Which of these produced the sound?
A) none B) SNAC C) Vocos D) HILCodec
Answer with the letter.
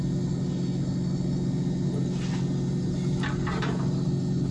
A